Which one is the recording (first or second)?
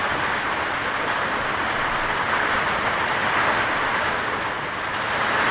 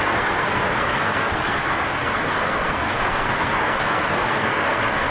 first